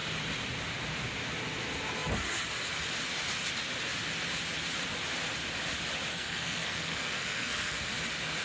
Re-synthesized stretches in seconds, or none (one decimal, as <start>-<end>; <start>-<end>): 6.1-7.9